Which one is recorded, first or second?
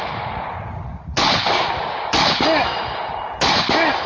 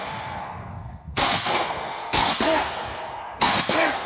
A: first